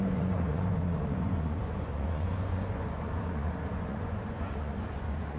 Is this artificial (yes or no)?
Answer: yes